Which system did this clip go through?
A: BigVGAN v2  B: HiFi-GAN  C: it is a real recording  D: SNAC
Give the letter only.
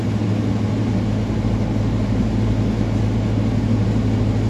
C